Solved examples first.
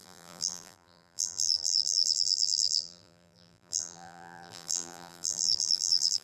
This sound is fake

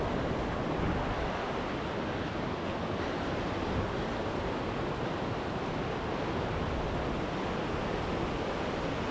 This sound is real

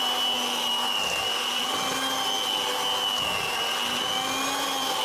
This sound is real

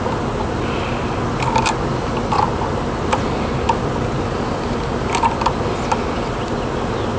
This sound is real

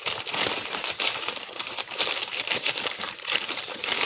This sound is fake